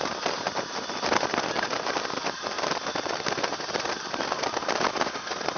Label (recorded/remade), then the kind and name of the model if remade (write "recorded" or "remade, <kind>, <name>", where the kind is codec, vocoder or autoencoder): recorded